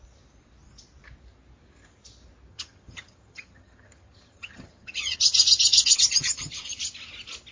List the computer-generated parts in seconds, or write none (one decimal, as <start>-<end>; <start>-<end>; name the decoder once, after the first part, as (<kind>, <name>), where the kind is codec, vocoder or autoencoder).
2.5-6.8 (vocoder, HiFi-GAN)